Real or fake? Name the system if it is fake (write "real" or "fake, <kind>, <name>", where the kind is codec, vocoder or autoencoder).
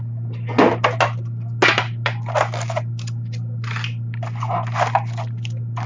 real